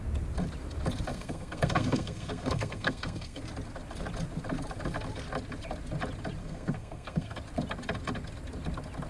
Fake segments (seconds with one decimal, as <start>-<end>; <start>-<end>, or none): 1.1-3.4; 6.4-7.4